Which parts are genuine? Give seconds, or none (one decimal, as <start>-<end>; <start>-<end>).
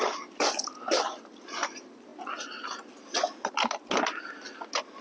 0.0-5.0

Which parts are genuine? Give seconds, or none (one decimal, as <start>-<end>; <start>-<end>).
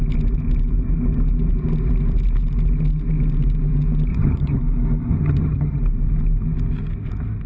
0.0-4.1; 4.6-5.1; 5.8-7.5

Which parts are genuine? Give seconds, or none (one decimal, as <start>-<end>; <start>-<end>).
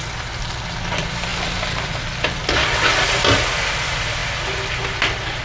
0.0-5.4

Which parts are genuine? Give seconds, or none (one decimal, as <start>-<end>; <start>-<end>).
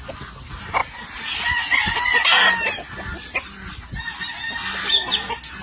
0.0-5.6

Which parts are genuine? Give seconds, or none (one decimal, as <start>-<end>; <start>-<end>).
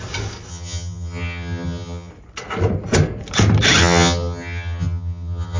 0.0-0.5; 2.1-3.8